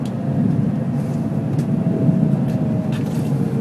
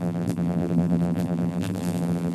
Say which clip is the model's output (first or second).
second